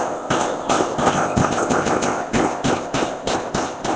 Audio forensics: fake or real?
fake